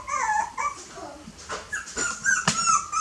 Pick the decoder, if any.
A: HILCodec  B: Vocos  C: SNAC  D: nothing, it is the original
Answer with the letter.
D